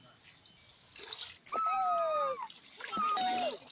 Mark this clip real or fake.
real